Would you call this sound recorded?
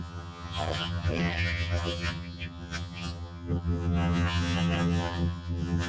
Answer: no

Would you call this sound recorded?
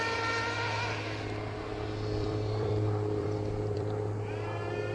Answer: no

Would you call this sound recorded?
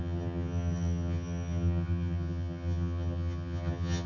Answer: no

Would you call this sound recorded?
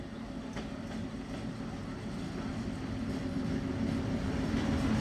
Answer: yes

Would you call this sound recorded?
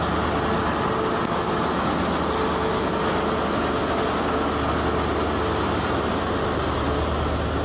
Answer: yes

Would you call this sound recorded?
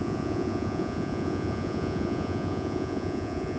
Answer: no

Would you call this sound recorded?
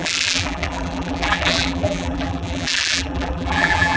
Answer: no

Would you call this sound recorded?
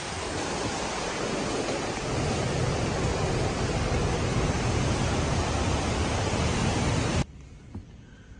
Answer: yes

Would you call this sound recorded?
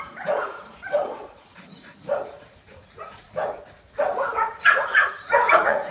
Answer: no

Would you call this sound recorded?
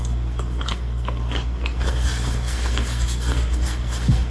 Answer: no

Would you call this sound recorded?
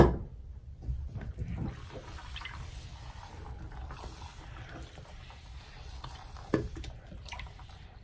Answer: yes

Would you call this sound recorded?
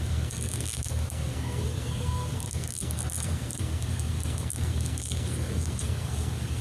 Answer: no